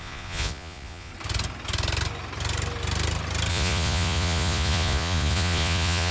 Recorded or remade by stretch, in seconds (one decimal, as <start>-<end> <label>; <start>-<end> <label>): 0.0-1.1 remade; 1.1-3.5 recorded; 3.5-6.1 remade